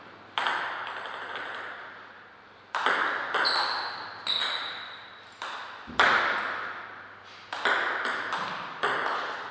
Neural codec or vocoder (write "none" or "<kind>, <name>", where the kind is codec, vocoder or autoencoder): none